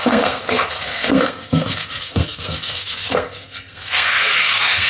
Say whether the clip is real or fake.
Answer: fake